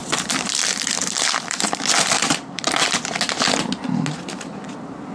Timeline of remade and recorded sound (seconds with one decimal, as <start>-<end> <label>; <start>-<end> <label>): 0.0-3.1 remade; 3.1-5.1 recorded